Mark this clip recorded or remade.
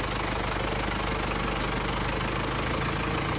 recorded